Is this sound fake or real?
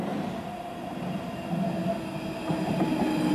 real